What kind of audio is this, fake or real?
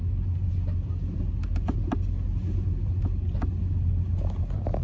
real